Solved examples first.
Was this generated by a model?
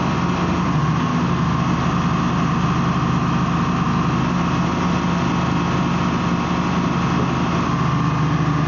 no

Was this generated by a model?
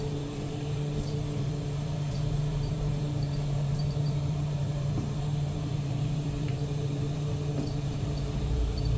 yes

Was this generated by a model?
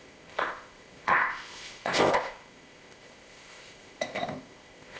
yes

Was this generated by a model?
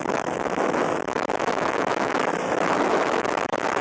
yes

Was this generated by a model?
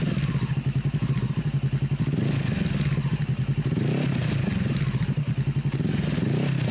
no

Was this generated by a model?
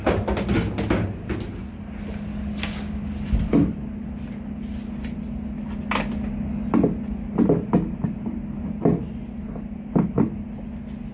no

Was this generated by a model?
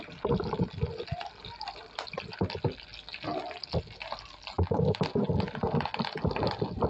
no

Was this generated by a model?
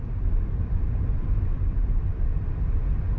yes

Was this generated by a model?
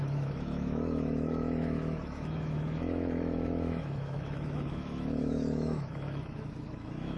yes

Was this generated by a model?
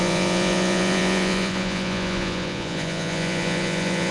yes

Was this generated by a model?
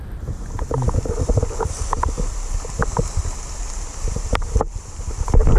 no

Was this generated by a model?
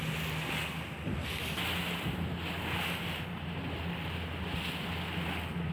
no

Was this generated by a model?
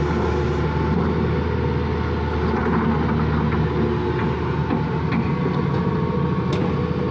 no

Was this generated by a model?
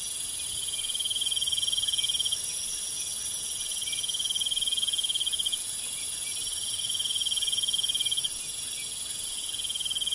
no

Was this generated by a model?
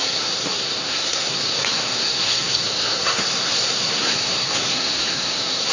yes